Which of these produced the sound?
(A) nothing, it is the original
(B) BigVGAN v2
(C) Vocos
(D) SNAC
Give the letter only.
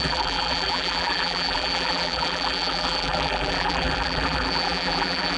B